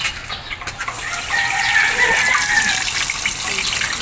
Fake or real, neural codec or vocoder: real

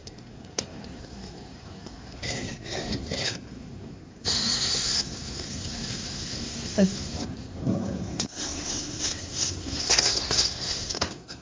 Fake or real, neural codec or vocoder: fake, codec, SNAC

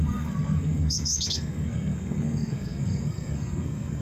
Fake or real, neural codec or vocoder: fake, codec, SNAC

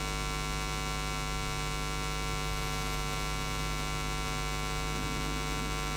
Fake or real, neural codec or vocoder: real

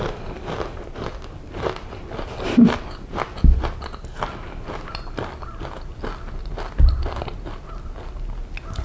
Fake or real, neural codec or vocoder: real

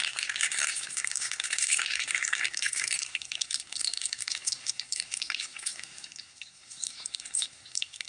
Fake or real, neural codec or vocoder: fake, codec, SNAC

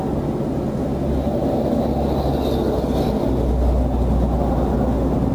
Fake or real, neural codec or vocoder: real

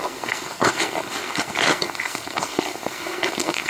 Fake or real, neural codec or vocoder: fake, codec, SNAC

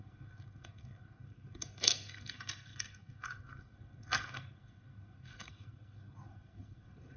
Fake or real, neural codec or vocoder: fake, codec, SNAC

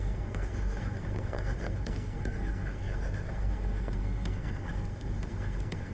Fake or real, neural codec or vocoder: fake, codec, SNAC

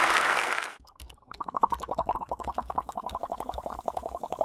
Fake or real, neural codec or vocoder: fake, codec, SNAC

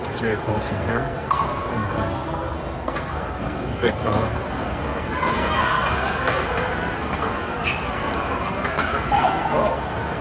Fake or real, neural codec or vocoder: fake, codec, SNAC